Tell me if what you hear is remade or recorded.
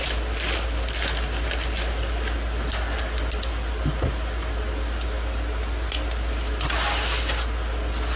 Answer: recorded